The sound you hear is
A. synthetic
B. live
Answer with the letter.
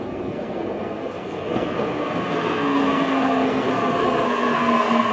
A